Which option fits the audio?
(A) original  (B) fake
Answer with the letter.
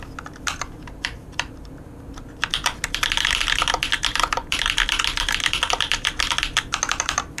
A